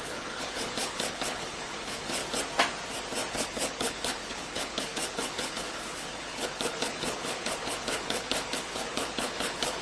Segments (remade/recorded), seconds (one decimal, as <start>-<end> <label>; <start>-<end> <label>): 0.0-2.2 remade; 2.2-3.3 recorded; 3.3-9.8 remade